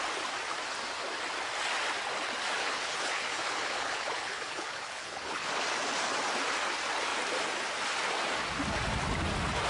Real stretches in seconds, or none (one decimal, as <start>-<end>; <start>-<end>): 0.0-2.6; 5.5-9.7